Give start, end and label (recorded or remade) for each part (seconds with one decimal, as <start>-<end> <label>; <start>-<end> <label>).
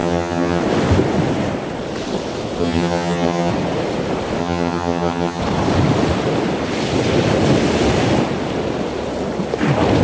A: 0.0-0.6 remade; 0.6-2.6 recorded; 2.6-3.5 remade; 3.5-4.4 recorded; 4.4-5.4 remade; 5.4-10.0 recorded